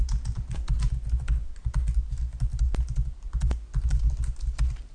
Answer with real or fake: real